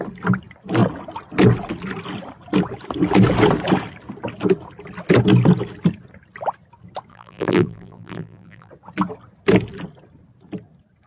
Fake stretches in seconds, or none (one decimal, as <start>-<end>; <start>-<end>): 7.1-8.7